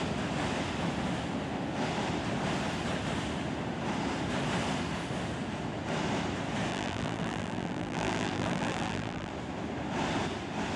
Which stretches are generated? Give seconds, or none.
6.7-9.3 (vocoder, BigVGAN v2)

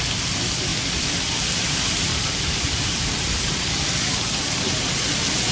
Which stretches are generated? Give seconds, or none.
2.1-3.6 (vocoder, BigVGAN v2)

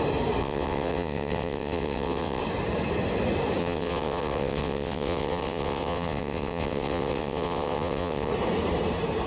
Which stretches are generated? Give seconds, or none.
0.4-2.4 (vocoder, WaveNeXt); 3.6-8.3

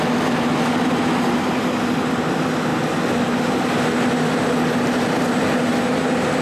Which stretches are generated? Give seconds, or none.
none

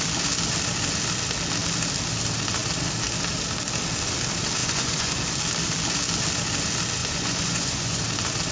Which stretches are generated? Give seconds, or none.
4.6-5.2 (vocoder, Vocos); 7.0-8.0

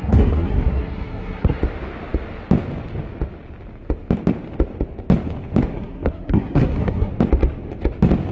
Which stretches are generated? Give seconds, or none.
0.0-1.6 (codec, SNAC); 5.7-7.1

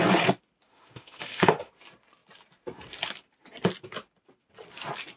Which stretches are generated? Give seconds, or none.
0.7-1.7 (autoencoder, DAC-VAE)

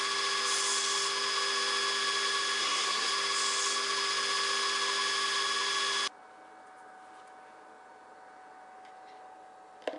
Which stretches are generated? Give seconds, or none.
2.6-3.1 (codec, SNAC)